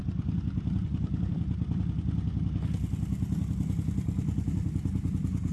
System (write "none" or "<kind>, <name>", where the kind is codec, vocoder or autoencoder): none